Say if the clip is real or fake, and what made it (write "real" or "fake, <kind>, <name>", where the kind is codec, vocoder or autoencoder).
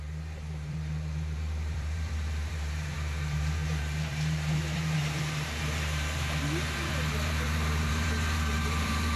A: fake, vocoder, BigVGAN v2